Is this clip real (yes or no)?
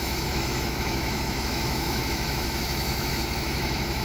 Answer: no